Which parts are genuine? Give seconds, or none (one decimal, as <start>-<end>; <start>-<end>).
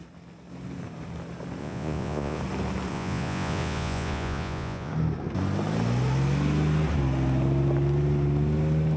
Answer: 0.0-1.6; 2.4-2.9; 4.9-9.0